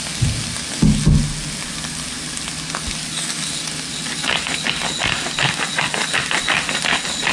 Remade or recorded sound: recorded